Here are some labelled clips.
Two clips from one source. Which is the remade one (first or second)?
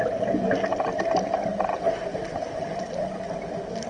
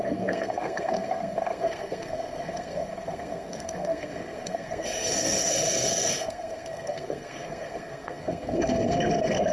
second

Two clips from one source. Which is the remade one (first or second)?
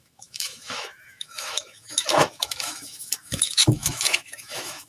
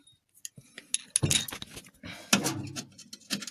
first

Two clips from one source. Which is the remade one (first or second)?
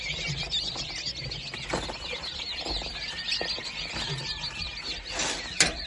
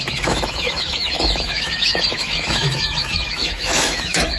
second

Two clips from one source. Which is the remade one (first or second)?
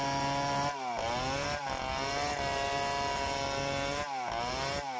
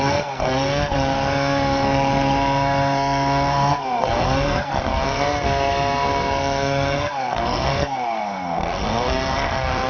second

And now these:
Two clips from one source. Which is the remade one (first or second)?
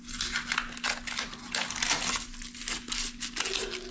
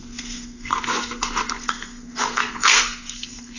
second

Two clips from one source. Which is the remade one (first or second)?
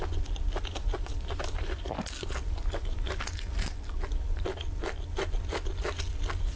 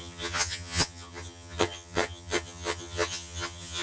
second